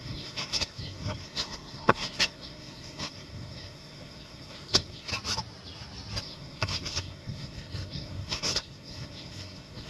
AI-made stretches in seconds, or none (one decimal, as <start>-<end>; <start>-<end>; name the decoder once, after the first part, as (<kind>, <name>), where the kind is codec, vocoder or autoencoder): 0.0-5.1 (codec, SNAC); 6.2-9.9